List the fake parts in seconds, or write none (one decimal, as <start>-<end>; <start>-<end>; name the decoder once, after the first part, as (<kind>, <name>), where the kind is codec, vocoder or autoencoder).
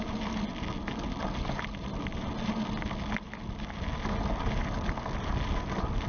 none